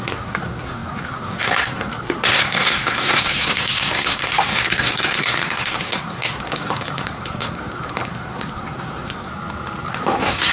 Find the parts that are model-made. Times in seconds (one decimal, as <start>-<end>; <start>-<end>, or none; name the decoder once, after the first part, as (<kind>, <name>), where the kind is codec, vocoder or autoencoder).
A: 0.0-9.3 (codec, SNAC); 9.9-10.5